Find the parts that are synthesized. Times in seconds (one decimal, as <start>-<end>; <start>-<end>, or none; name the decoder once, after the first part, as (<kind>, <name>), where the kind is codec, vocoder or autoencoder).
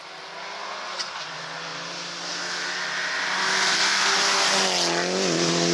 none